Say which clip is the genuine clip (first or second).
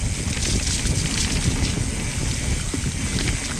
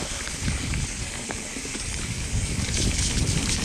first